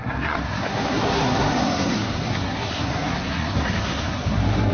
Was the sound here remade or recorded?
remade